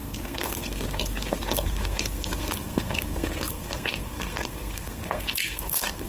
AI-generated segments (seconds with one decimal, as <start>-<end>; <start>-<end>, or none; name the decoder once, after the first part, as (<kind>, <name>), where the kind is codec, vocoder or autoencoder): 0.0-6.1 (codec, SNAC)